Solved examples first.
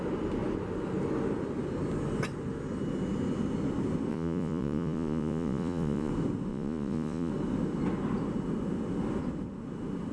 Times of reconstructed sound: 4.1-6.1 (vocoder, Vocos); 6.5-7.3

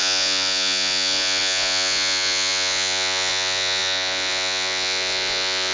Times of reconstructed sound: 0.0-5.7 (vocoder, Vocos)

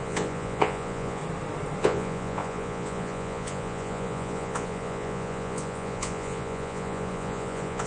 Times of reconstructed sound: 0.0-1.2 (vocoder, Vocos); 1.8-7.9

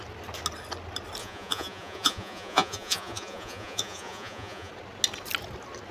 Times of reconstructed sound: 1.2-4.7 (vocoder, Vocos)

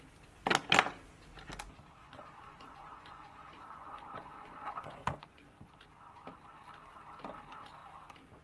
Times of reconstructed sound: 2.0-5.7 (vocoder, Vocos)

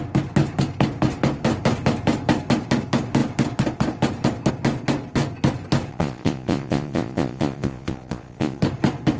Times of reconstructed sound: 5.9-8.6 (vocoder, Vocos)